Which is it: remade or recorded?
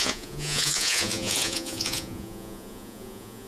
remade